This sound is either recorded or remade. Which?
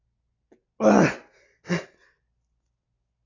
recorded